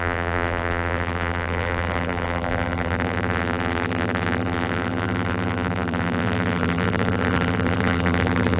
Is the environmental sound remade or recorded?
remade